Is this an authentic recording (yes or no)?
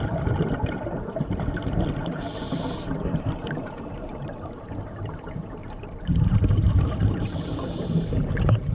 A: no